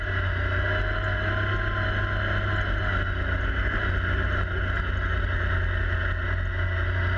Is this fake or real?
real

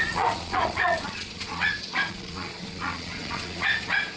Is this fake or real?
fake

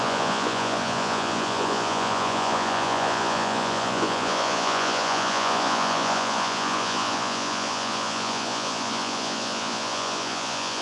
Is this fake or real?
fake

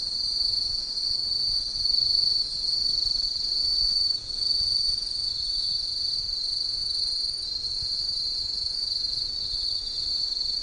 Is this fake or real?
fake